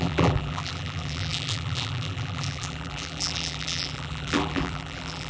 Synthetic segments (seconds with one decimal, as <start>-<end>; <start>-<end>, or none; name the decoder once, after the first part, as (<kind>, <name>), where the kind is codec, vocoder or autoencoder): 0.0-5.3 (vocoder, BigVGAN v2)